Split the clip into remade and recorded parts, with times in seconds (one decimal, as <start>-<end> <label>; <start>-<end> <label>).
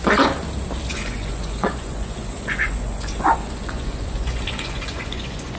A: 0.0-0.9 recorded; 0.9-5.6 remade